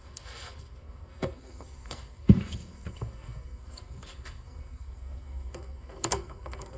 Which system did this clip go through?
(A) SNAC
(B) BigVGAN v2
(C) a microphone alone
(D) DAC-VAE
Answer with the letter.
A